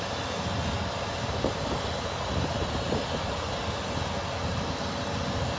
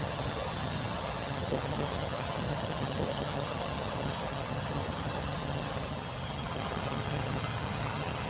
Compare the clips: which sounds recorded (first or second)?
first